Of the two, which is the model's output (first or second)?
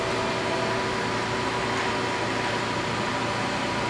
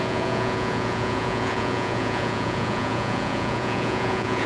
second